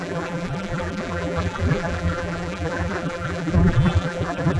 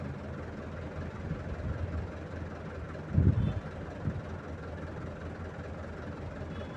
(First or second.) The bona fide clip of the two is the second